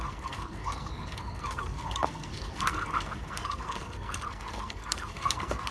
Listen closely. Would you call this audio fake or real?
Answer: fake